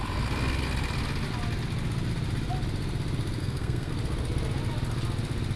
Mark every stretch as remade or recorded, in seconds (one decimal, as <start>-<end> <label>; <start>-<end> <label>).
0.0-3.4 recorded; 3.4-3.9 remade; 3.9-5.6 recorded

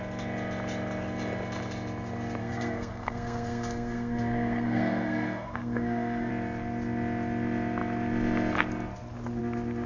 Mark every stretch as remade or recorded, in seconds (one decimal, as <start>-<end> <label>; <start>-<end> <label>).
0.0-2.4 recorded; 2.4-6.3 remade; 6.3-9.9 recorded